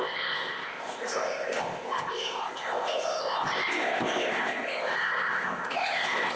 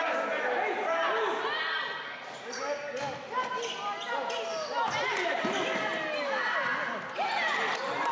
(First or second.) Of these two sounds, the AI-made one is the first